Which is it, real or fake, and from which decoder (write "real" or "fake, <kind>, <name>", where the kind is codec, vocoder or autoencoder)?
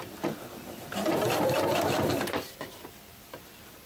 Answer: real